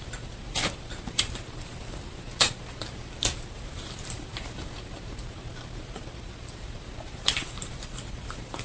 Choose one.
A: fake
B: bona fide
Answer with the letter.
A